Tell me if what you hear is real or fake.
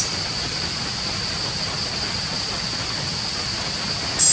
real